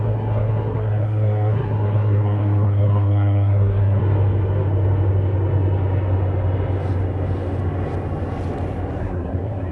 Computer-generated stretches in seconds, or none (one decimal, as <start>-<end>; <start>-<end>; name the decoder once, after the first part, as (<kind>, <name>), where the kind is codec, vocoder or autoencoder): 0.0-4.0 (codec, SNAC); 9.0-9.7